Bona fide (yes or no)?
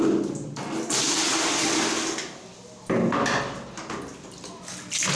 yes